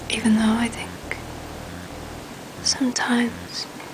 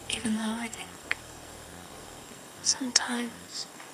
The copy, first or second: second